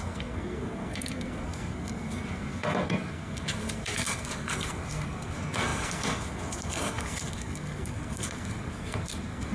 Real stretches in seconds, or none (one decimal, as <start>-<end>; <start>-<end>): none